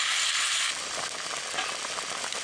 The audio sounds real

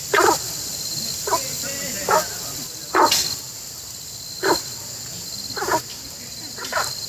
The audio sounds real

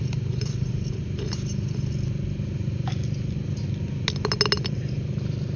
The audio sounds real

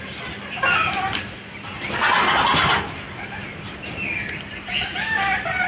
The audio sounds real